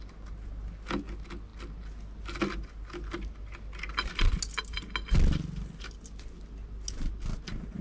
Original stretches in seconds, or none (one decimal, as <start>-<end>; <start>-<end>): 0.0-7.8